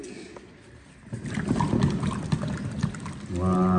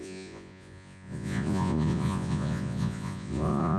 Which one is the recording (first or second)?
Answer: first